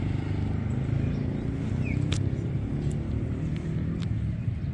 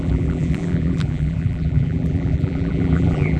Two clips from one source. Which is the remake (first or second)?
second